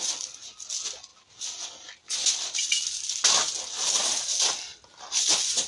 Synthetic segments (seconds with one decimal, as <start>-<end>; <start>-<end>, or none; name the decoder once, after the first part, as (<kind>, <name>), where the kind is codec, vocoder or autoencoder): none